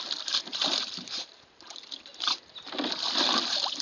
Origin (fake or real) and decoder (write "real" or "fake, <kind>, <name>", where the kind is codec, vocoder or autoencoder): real